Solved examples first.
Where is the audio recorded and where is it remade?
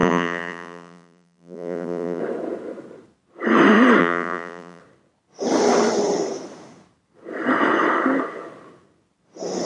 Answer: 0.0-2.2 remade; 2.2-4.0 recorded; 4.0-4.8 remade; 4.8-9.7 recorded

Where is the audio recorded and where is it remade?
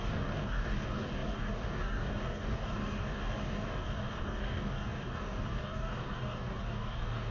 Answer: 0.0-7.3 remade